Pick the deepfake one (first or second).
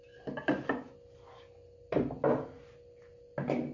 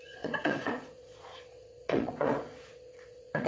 second